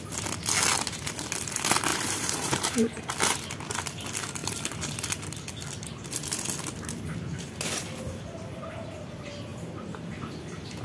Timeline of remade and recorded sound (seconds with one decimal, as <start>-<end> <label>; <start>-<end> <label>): 0.0-1.9 recorded; 1.9-3.0 remade; 3.0-9.5 recorded; 9.5-10.8 remade